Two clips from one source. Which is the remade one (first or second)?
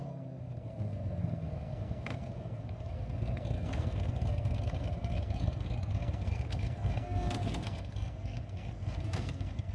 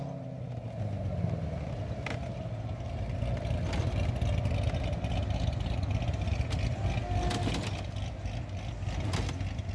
first